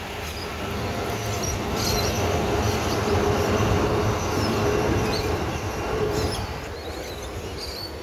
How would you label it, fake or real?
real